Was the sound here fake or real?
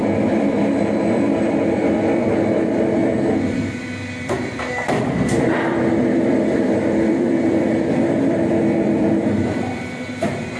fake